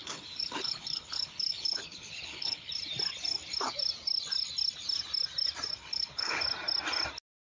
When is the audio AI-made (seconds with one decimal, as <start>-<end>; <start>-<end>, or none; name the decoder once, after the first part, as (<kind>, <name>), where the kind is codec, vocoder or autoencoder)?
0.0-2.7 (codec, HILCodec); 5.8-6.4